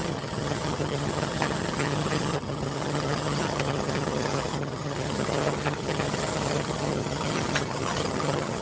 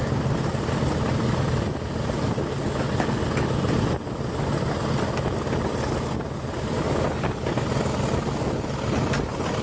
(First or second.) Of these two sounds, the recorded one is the second